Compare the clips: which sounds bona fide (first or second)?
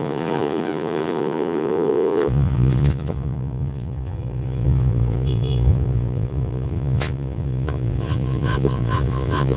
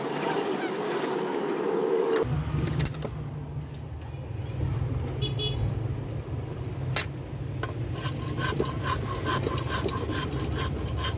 second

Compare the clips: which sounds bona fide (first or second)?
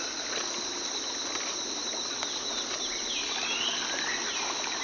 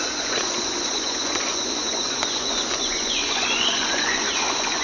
first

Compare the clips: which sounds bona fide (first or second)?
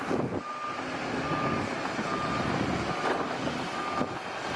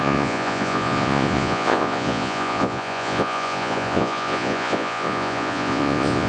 first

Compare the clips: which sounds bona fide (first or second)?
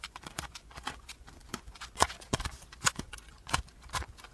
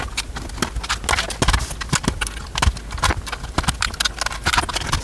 second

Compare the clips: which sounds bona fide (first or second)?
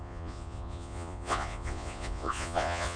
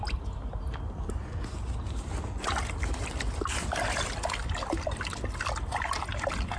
second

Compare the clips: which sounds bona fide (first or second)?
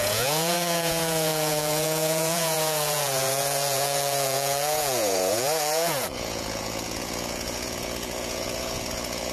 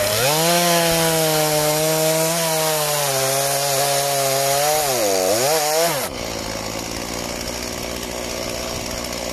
second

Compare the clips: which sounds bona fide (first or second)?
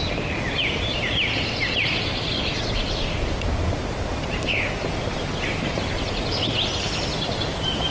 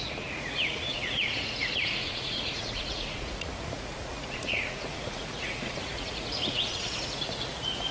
first